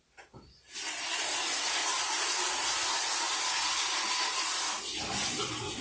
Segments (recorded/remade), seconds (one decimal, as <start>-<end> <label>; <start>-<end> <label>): 0.0-5.8 recorded